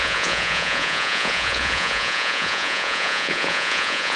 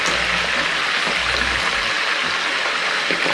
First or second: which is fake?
first